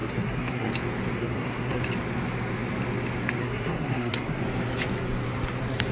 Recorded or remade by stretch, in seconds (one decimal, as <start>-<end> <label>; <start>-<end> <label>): 0.0-0.7 remade; 0.7-1.2 recorded; 1.2-1.8 remade; 1.8-3.4 recorded; 3.4-4.4 remade; 4.4-5.9 recorded